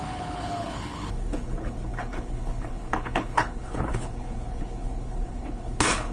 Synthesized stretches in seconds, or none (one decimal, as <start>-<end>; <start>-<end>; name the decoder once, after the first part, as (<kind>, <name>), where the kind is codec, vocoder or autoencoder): 0.0-6.1 (codec, HILCodec)